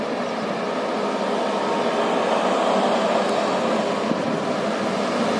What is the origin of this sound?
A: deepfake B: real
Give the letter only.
B